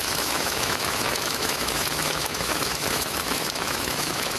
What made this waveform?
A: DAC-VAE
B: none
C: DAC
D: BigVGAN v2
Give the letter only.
A